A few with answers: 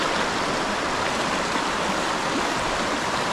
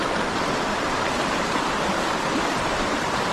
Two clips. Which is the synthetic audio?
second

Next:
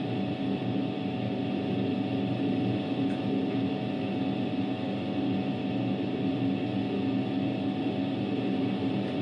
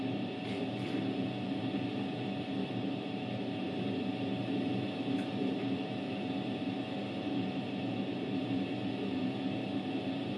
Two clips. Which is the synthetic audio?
second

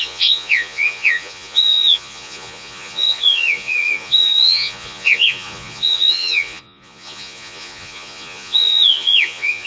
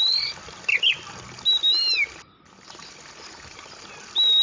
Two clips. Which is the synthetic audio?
first